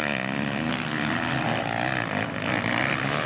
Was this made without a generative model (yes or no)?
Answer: yes